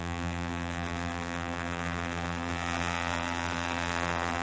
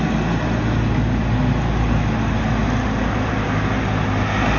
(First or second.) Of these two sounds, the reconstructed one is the first